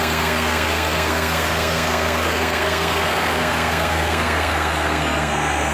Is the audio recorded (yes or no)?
no